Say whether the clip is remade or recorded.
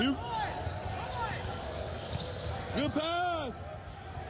recorded